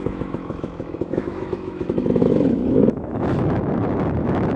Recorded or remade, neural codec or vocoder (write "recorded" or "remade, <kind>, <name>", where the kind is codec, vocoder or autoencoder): remade, autoencoder, DAC-VAE